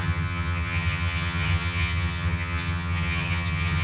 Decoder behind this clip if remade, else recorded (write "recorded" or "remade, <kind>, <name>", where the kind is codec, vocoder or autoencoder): remade, vocoder, HiFi-GAN